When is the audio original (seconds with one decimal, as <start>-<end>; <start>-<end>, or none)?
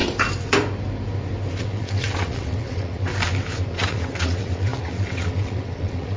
0.0-1.6; 3.1-3.7